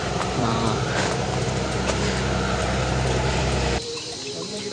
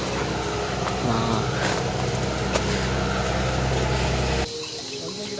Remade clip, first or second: first